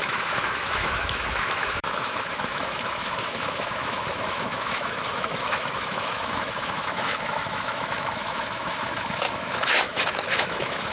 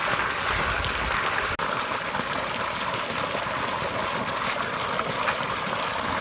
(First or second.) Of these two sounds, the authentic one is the second